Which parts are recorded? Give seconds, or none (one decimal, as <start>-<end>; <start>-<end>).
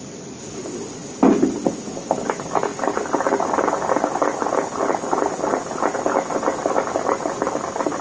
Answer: 0.0-8.0